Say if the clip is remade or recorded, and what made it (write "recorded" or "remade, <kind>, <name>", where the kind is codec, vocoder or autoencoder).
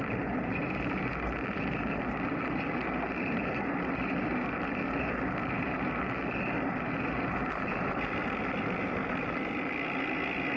recorded